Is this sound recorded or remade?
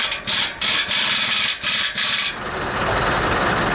recorded